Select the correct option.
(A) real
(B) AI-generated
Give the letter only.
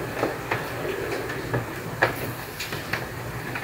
A